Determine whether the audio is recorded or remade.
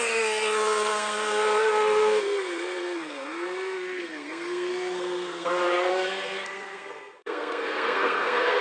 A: remade